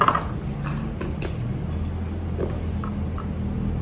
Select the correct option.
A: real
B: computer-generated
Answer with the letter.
A